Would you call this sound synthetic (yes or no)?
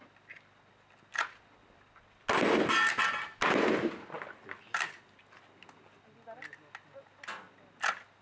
no